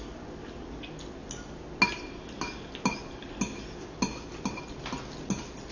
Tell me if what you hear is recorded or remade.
recorded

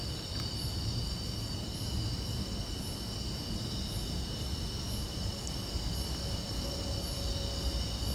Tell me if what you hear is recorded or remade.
recorded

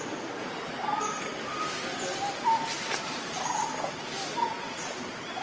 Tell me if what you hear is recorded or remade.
recorded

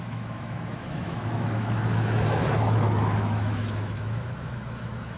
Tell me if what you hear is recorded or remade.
remade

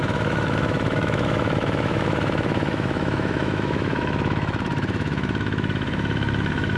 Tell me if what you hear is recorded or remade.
remade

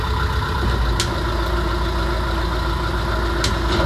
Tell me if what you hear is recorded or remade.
recorded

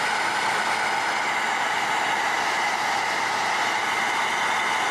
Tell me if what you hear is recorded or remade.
recorded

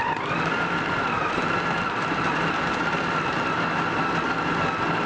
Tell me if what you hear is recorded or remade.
recorded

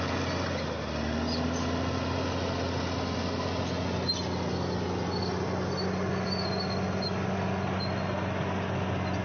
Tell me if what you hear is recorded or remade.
recorded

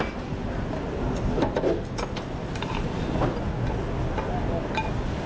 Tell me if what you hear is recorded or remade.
recorded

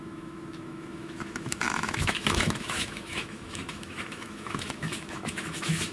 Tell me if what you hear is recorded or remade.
remade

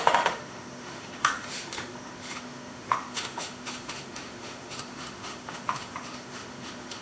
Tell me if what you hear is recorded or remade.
remade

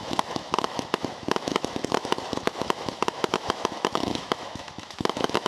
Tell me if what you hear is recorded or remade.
remade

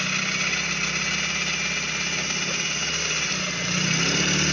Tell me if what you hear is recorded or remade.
recorded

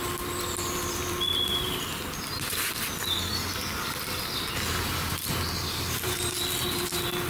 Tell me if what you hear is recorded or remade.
recorded